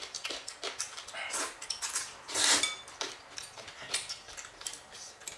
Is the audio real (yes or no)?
yes